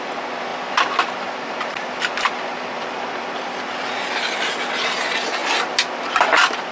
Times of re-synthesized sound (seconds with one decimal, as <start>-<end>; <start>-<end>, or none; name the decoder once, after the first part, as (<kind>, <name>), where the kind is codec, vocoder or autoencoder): 0.5-4.5 (vocoder, BigVGAN v2)